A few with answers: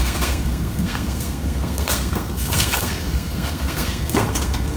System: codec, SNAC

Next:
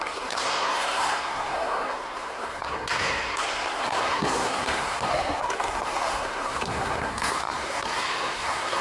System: codec, SNAC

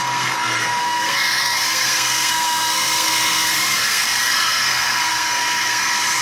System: codec, SNAC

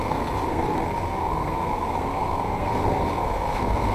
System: codec, SNAC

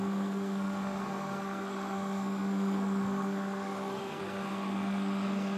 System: codec, SNAC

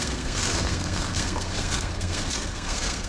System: codec, SNAC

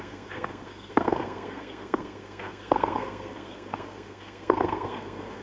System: codec, SNAC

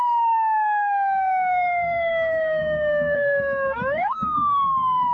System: codec, SNAC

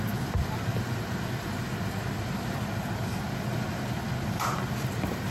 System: none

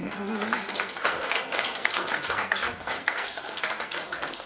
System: codec, SNAC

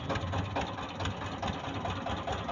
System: none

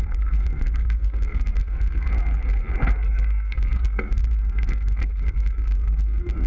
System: codec, SNAC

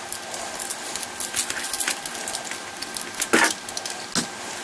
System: none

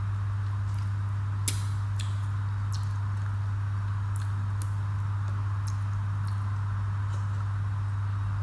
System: none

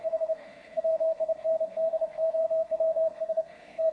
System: codec, SNAC